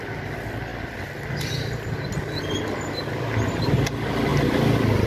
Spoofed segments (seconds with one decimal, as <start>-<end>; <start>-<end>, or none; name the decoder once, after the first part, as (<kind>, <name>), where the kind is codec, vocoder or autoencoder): 0.7-3.8 (vocoder, BigVGAN v2)